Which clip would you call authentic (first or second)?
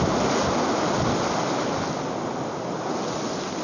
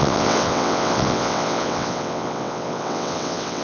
first